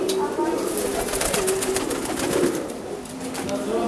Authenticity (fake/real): real